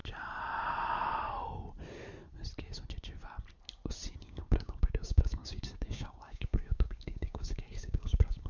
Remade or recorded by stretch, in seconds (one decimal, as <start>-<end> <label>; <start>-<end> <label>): 0.0-4.2 recorded; 4.2-8.5 remade